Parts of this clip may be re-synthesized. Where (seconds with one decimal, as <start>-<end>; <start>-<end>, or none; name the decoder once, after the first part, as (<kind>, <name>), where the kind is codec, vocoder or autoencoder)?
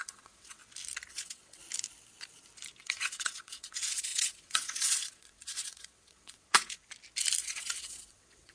0.0-0.6 (vocoder, WaveNeXt); 1.1-1.6; 2.8-6.8; 7.4-8.5